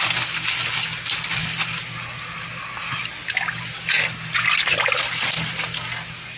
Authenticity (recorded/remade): recorded